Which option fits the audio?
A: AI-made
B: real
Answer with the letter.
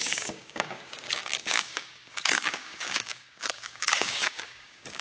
A